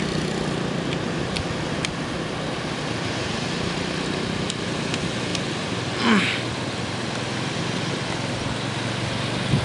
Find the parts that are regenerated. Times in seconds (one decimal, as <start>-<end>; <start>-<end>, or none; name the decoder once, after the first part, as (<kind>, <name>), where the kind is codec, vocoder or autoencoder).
none